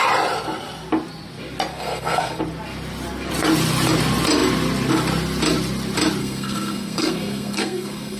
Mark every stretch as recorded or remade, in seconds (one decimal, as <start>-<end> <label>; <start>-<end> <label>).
0.0-1.7 recorded; 1.7-2.4 remade; 2.4-6.2 recorded; 6.2-8.2 remade